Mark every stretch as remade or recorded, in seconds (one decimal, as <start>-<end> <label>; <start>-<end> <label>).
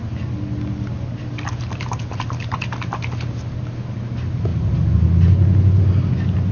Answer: 0.0-6.5 recorded